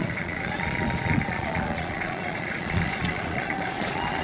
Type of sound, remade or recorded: remade